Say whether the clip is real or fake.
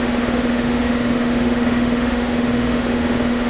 fake